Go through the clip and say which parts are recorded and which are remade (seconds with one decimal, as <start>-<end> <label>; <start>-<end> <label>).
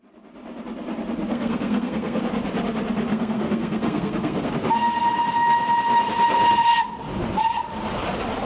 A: 0.0-1.3 recorded; 1.3-2.2 remade; 2.2-3.1 recorded; 3.1-4.5 remade; 4.5-8.5 recorded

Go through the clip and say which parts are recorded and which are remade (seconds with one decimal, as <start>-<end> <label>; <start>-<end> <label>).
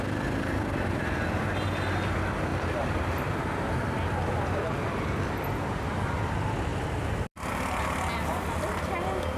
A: 0.0-2.5 recorded; 2.5-5.9 remade; 5.9-6.7 recorded; 6.7-7.5 remade; 7.5-9.4 recorded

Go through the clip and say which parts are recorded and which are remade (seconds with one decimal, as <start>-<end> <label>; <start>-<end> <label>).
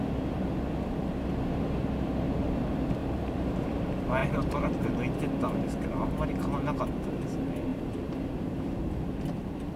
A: 0.0-3.0 recorded; 3.0-3.8 remade; 3.8-4.2 recorded; 4.2-4.9 remade; 4.9-7.7 recorded; 7.7-9.2 remade; 9.2-9.8 recorded